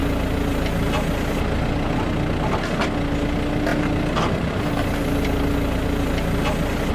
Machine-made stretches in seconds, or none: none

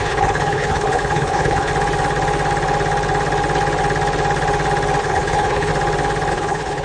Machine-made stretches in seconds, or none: 0.0-1.7 (codec, HILCodec); 5.0-5.7; 6.3-6.8

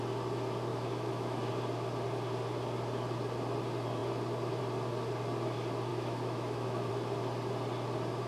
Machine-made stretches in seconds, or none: 0.7-1.5 (autoencoder, DAC-VAE); 5.9-6.9

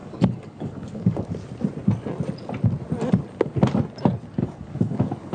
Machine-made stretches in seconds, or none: 0.0-1.3 (codec, DAC); 4.4-5.3

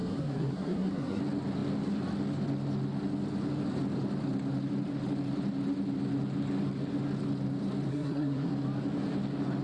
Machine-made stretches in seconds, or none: 0.0-1.2 (codec, SNAC); 7.9-8.5

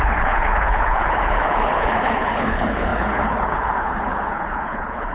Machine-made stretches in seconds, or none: 0.0-5.1 (codec, HILCodec)

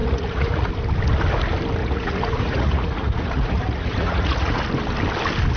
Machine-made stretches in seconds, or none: 0.0-0.7 (vocoder, Vocos); 1.8-4.6